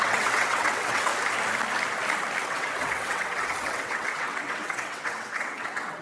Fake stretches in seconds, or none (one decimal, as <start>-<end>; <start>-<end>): 0.0-1.1; 2.4-6.0